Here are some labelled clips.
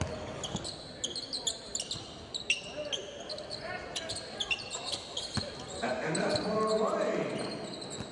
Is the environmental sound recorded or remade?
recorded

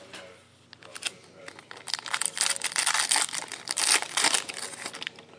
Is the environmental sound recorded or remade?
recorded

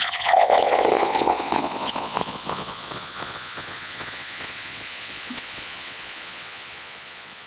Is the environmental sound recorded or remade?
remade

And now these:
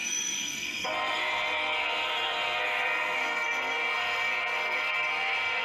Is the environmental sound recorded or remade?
remade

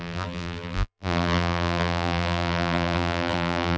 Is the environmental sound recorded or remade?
remade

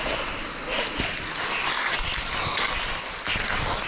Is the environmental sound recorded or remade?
recorded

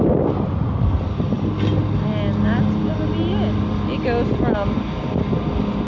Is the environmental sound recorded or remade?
recorded